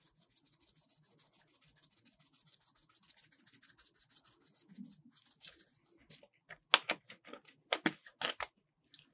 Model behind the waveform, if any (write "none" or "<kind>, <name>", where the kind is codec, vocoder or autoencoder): none